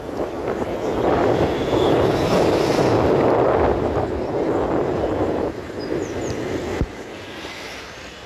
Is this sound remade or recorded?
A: recorded